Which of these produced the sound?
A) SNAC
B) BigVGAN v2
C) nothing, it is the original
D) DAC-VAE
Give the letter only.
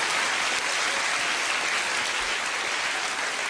C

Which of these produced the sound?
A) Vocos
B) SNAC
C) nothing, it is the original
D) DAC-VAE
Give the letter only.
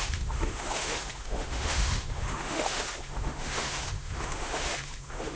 D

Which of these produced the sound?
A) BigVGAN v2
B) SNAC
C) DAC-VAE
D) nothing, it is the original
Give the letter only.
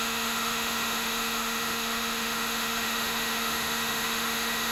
C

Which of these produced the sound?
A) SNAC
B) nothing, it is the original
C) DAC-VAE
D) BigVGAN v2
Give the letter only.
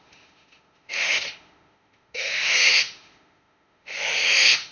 C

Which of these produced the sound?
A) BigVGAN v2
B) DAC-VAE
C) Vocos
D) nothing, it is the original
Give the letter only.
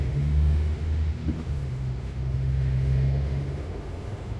B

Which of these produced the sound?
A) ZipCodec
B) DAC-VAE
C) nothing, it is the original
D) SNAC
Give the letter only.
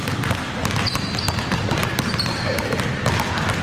C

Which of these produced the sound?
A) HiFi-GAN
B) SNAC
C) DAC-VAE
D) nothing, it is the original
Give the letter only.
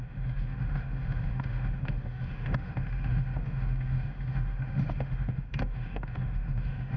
C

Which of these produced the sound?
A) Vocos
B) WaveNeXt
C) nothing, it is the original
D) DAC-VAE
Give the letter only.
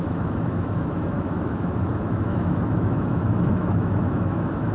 D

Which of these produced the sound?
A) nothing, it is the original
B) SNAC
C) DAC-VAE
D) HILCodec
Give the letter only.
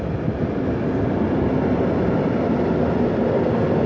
A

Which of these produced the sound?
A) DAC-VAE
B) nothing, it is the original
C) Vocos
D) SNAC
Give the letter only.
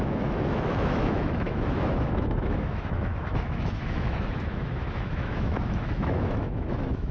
A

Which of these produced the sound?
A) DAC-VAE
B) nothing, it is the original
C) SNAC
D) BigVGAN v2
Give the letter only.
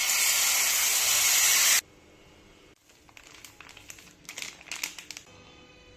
B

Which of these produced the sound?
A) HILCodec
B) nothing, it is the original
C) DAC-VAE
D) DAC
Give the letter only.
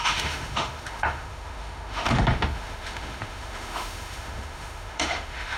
C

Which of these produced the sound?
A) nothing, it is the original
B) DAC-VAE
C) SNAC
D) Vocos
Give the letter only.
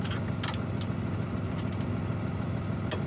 A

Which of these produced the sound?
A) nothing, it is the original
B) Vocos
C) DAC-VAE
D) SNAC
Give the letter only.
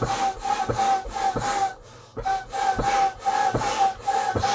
A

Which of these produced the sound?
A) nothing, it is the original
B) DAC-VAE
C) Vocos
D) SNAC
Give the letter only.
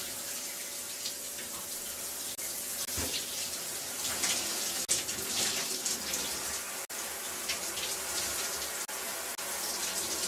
A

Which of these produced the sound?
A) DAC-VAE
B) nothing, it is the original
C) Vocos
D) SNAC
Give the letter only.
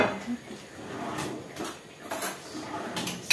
B